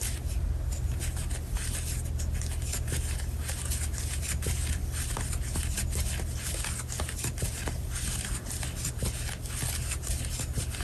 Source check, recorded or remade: recorded